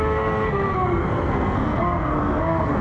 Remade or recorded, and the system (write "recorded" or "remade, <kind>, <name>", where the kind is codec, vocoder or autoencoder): remade, codec, SNAC